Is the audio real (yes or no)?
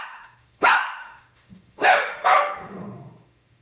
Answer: no